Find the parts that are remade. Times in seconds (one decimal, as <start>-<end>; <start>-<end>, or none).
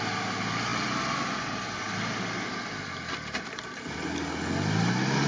none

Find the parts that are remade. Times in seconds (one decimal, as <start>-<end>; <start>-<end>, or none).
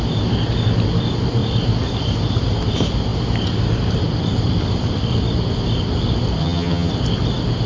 6.4-6.9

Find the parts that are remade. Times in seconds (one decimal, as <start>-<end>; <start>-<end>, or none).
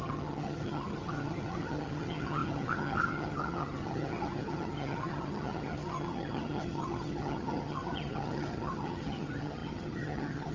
0.0-10.5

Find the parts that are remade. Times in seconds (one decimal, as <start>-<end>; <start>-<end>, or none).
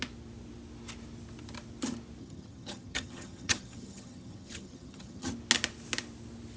2.2-5.3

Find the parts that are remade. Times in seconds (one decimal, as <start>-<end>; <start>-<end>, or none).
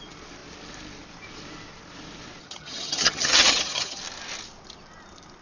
2.4-4.0